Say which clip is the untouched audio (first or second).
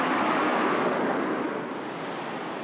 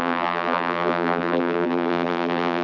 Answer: first